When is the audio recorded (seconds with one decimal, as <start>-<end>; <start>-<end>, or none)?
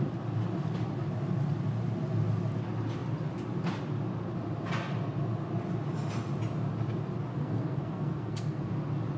0.0-7.3; 8.7-9.2